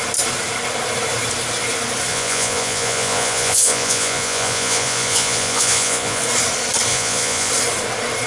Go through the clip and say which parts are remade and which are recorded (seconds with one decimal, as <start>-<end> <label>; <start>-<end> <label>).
0.0-2.1 recorded; 2.1-6.2 remade; 6.2-6.9 recorded; 6.9-7.5 remade; 7.5-8.3 recorded